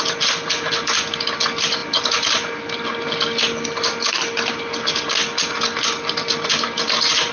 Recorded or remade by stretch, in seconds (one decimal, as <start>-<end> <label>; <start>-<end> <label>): 0.0-7.3 recorded